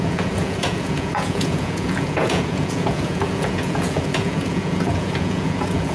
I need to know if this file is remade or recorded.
remade